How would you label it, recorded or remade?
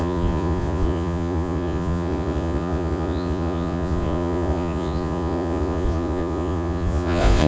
remade